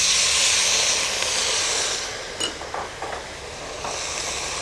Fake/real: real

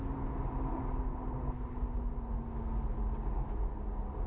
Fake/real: real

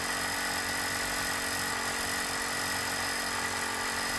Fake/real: real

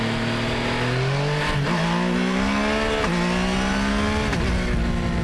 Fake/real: real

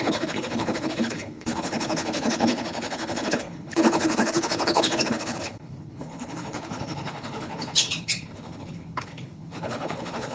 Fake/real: fake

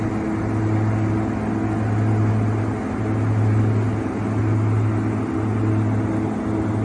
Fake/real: real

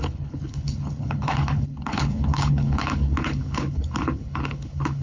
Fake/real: fake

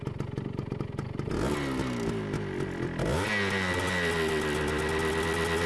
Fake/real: real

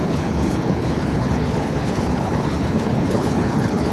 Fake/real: fake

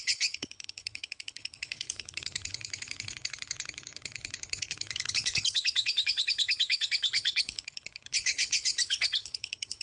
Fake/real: fake